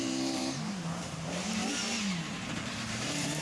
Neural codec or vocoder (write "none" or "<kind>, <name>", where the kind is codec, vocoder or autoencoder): vocoder, BigVGAN v2